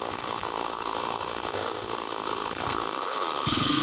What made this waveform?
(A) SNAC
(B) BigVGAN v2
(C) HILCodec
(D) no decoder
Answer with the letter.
A